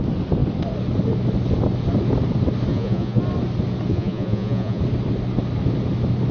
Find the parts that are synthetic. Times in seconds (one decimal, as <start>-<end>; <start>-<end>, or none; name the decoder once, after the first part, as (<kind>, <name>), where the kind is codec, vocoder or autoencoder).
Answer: 2.7-3.2 (vocoder, Vocos); 3.9-4.8